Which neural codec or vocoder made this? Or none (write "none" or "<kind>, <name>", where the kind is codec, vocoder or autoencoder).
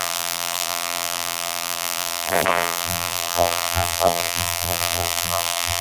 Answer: vocoder, BigVGAN v2